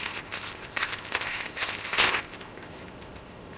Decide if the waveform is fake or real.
fake